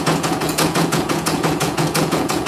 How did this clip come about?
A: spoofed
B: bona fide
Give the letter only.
A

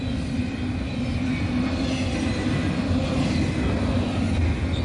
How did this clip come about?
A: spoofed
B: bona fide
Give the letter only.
B